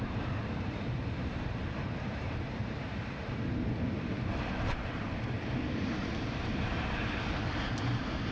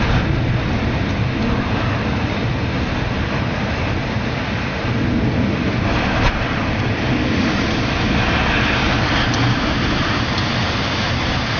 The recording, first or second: second